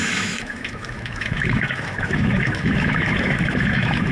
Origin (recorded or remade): remade